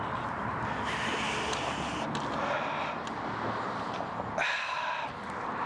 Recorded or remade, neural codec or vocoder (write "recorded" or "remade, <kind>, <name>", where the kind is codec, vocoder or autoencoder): recorded